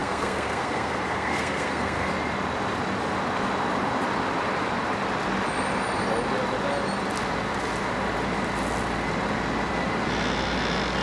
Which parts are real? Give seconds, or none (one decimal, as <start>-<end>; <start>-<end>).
2.1-11.0